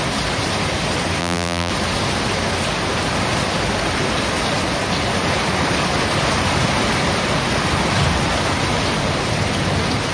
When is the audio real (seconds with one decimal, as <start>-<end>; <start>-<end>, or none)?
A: 0.0-1.2; 1.7-10.1